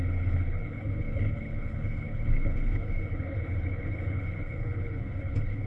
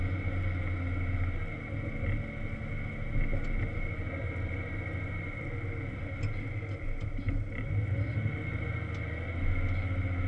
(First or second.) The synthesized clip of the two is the first